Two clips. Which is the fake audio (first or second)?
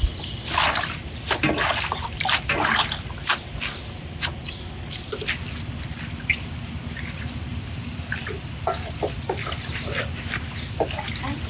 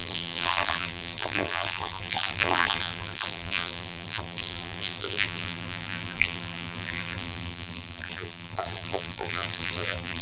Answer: second